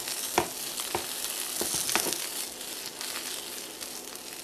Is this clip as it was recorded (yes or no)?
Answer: yes